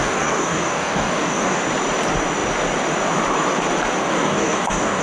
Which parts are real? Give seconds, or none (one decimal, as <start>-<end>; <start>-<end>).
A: 1.6-4.0